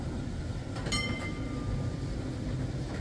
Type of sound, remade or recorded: recorded